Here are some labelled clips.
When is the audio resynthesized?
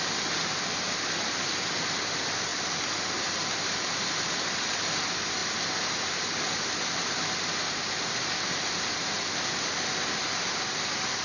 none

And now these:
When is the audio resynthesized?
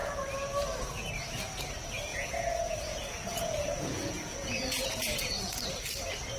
2.1-5.6 (vocoder, Vocos)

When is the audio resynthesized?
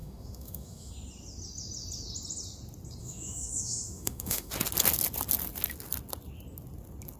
0.0-0.9 (autoencoder, DAC-VAE); 3.0-4.5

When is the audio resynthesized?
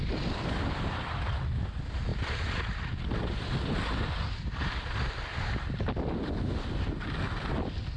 none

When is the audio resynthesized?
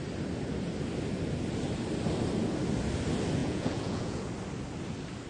3.4-4.3 (vocoder, Vocos)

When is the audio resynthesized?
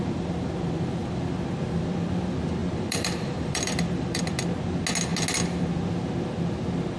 2.6-4.2 (vocoder, BigVGAN v2)